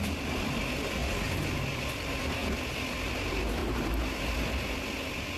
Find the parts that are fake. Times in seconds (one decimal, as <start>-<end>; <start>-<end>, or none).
3.6-4.2